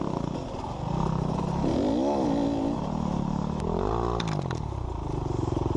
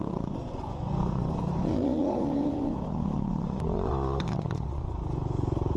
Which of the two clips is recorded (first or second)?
first